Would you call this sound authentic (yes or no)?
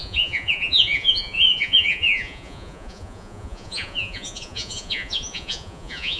no